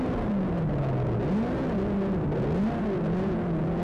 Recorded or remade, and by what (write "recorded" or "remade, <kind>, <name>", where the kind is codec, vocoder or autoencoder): recorded